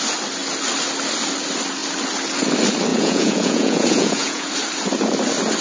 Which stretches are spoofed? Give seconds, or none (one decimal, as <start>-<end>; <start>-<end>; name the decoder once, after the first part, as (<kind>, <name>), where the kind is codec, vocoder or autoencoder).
2.9-4.5 (vocoder, Vocos)